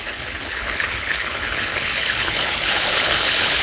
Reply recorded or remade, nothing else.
remade